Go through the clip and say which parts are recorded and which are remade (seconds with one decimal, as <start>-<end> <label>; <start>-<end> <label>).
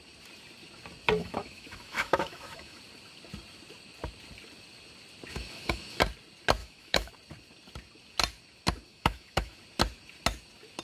0.0-1.2 recorded; 1.2-2.8 remade; 2.8-5.3 recorded; 5.3-6.0 remade; 6.0-6.6 recorded; 6.6-7.1 remade; 7.1-8.9 recorded; 8.9-9.6 remade; 9.6-10.8 recorded